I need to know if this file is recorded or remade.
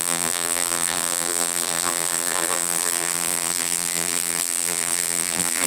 remade